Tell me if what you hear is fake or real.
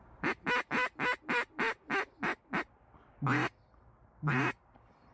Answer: real